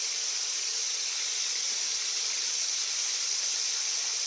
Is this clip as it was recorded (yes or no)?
yes